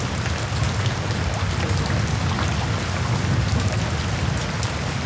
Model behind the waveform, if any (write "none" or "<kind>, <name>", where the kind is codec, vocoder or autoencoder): none